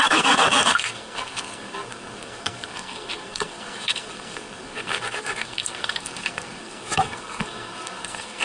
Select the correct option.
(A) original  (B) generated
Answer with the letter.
B